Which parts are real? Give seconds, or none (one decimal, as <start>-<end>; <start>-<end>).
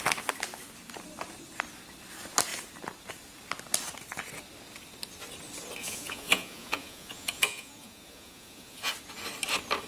0.0-5.8; 8.9-9.9